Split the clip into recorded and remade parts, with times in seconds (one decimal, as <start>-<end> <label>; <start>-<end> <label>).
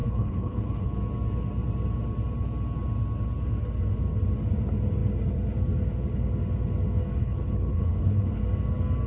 0.0-0.9 remade; 0.9-7.2 recorded; 7.2-8.4 remade; 8.4-9.1 recorded